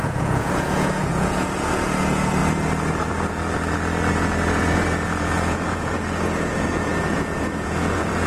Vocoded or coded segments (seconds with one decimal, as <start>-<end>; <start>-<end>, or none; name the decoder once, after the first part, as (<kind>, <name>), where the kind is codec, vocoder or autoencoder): 0.0-2.4 (vocoder, Vocos); 4.1-8.3